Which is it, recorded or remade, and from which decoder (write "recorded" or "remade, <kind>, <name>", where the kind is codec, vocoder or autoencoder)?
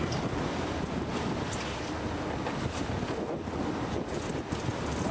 recorded